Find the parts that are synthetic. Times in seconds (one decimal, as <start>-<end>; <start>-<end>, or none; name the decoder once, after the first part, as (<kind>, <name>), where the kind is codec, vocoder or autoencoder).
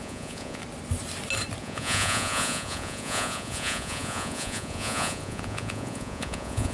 0.0-0.6 (vocoder, Vocos); 1.6-6.7